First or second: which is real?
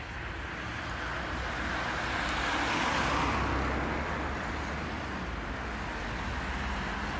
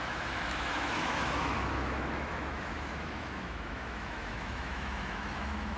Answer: first